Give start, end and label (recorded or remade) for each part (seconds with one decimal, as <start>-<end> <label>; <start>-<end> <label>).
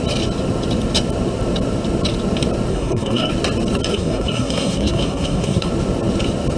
0.0-2.7 recorded; 2.7-3.3 remade; 3.3-3.9 recorded; 3.9-5.7 remade; 5.7-6.6 recorded